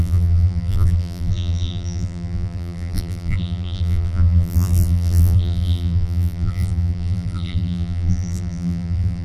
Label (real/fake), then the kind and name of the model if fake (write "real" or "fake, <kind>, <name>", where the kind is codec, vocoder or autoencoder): fake, vocoder, BigVGAN v2